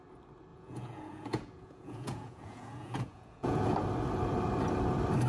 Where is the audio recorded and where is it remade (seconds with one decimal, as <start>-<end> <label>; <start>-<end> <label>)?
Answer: 0.0-0.5 recorded; 0.5-3.7 remade; 3.7-5.3 recorded